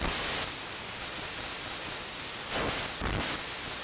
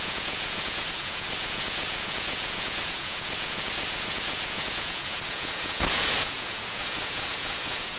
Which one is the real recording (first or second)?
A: first